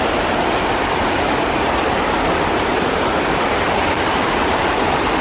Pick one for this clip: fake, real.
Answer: real